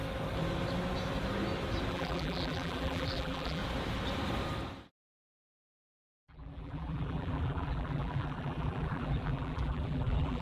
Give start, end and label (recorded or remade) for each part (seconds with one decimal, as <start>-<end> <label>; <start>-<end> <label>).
0.0-1.9 recorded; 1.9-3.6 remade; 3.6-5.2 recorded; 5.2-10.4 remade